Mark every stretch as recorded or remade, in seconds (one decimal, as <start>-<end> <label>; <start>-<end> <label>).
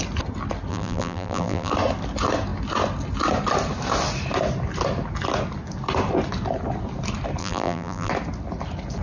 0.0-0.7 recorded; 0.7-1.7 remade; 1.7-7.4 recorded; 7.4-8.1 remade; 8.1-9.0 recorded